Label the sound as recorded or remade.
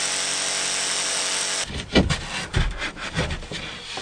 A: recorded